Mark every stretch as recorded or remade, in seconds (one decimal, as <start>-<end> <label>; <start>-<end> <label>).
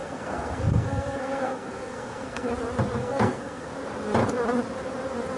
0.0-2.5 remade; 2.5-3.0 recorded; 3.0-3.7 remade; 3.7-5.4 recorded